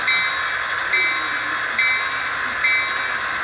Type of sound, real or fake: real